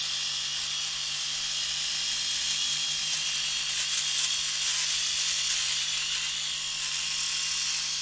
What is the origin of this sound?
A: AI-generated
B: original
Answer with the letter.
B